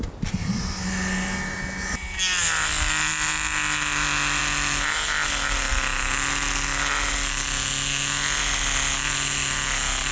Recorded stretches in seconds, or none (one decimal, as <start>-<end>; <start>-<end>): 0.0-10.1

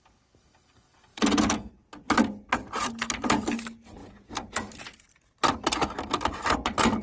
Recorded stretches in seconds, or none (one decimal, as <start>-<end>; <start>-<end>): 0.0-1.1; 1.7-4.0; 4.7-7.0